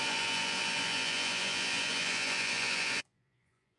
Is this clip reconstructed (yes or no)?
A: yes